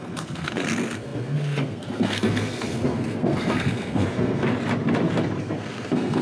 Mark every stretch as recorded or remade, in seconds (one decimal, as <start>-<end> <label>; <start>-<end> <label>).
0.0-4.5 remade; 4.5-5.4 recorded; 5.4-6.2 remade